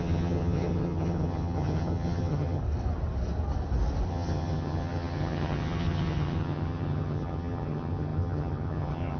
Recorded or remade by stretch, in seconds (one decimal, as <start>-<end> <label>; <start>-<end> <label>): 0.0-2.6 remade; 2.6-4.1 recorded; 4.1-9.2 remade